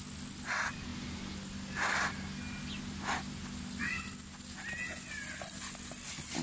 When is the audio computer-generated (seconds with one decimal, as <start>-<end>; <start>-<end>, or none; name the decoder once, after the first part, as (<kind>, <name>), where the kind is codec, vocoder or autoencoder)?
none